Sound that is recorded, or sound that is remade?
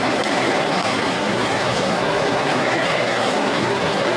remade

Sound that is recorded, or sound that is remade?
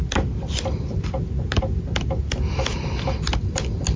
recorded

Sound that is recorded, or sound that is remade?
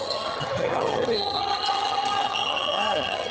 remade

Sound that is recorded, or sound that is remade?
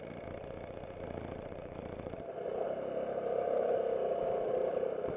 remade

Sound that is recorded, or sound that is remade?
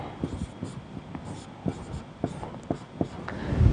recorded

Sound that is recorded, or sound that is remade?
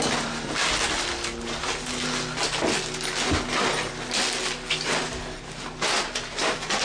recorded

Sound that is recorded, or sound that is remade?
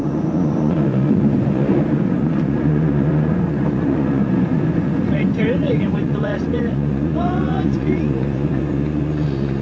remade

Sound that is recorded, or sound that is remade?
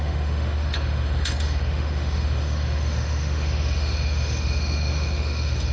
remade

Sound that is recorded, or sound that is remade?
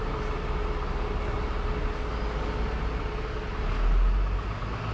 recorded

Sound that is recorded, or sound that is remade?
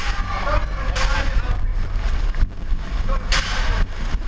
recorded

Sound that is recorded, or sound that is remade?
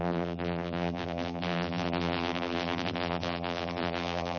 remade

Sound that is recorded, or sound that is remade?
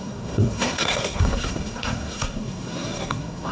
remade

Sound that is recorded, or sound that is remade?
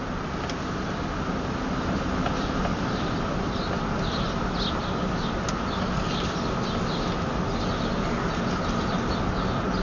recorded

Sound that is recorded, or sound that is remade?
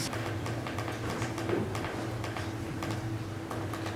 recorded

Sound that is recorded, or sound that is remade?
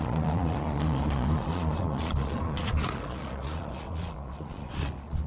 remade